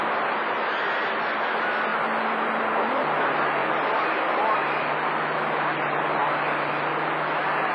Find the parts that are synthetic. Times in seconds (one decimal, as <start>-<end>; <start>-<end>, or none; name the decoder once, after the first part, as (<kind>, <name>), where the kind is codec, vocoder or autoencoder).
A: none